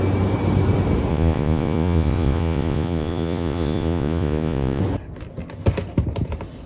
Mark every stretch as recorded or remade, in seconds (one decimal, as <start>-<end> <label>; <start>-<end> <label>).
0.0-1.1 recorded; 1.1-4.8 remade; 4.8-6.7 recorded